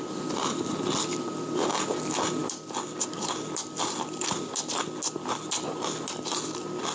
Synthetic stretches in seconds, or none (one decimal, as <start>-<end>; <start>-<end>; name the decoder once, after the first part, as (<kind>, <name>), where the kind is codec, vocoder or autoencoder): none